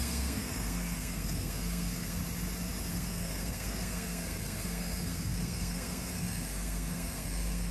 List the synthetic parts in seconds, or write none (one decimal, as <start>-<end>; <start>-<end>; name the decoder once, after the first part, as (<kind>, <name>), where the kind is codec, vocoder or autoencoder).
0.0-2.2 (codec, SNAC); 2.9-7.7